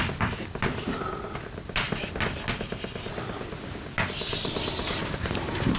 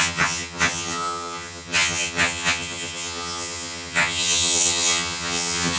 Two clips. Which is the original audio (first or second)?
first